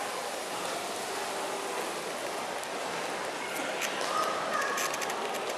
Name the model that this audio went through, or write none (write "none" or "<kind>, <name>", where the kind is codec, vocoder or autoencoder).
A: none